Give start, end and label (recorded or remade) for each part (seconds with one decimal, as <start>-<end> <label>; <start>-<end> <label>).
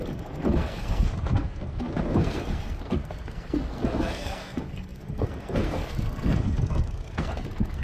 0.0-7.8 remade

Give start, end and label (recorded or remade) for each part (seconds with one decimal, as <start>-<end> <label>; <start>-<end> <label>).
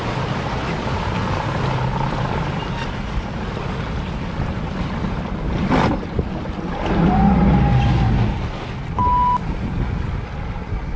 0.0-11.0 recorded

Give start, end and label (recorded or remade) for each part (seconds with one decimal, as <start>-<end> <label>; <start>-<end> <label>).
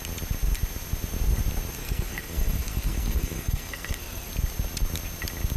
0.0-1.8 recorded; 1.8-4.3 remade; 4.3-5.6 recorded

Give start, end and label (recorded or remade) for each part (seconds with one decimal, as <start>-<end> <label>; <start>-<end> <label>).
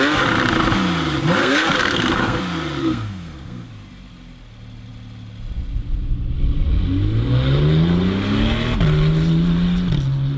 0.0-1.4 recorded; 1.4-2.4 remade; 2.4-2.8 recorded; 2.8-3.7 remade; 3.7-10.4 recorded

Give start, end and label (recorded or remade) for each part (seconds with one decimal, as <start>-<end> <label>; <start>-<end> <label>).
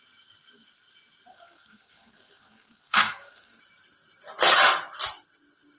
0.0-1.3 recorded; 1.3-3.6 remade; 3.6-5.8 recorded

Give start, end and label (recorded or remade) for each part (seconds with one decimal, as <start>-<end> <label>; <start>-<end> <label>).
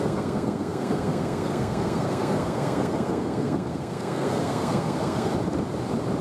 0.0-5.3 remade; 5.3-6.2 recorded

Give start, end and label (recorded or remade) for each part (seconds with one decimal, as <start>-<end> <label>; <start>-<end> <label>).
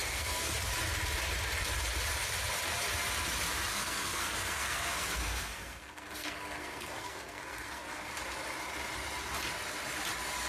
0.0-0.5 remade; 0.5-3.7 recorded; 3.7-8.1 remade; 8.1-10.5 recorded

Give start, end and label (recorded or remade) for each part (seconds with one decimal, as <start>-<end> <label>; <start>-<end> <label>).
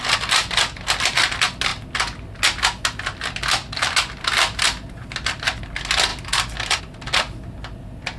0.0-8.2 recorded